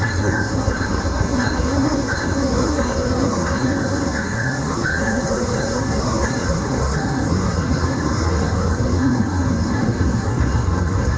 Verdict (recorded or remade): remade